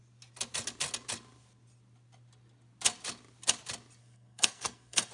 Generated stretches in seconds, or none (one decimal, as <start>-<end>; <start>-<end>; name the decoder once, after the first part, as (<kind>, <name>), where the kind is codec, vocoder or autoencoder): 4.0-5.1 (codec, SNAC)